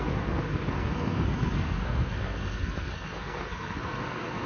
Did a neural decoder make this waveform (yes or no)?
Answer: yes